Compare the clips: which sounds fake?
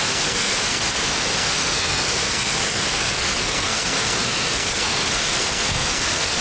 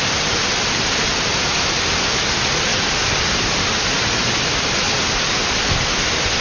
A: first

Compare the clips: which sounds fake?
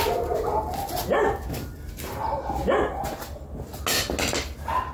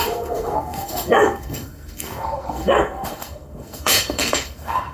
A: second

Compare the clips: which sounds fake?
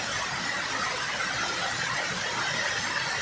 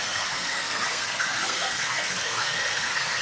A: second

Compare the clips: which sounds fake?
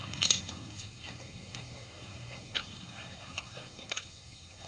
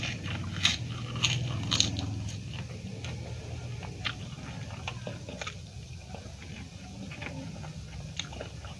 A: first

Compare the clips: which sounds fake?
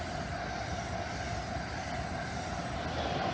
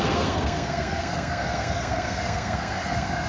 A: second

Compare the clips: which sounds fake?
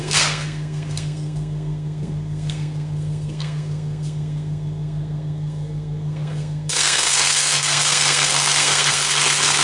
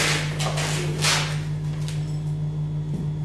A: first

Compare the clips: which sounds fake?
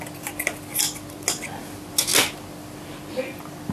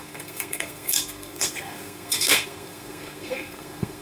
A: second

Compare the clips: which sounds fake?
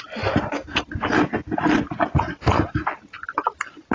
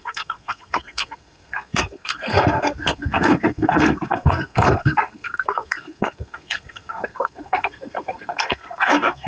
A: second